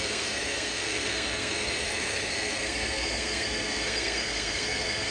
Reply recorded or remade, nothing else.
remade